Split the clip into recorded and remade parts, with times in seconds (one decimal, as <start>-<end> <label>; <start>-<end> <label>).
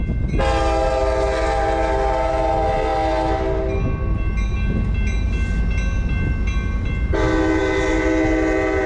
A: 0.0-8.9 recorded